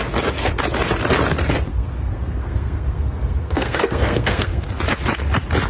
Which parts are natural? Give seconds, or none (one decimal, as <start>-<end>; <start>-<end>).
0.0-1.7; 4.7-5.7